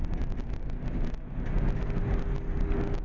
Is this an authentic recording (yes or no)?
yes